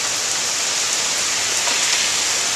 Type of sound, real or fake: real